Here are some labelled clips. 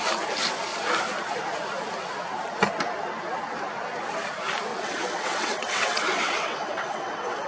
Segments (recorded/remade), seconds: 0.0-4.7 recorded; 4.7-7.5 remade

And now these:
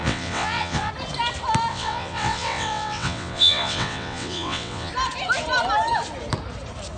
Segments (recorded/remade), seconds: 0.0-0.9 remade; 0.9-1.7 recorded; 1.7-4.9 remade; 4.9-7.0 recorded